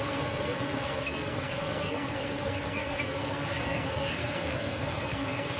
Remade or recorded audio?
remade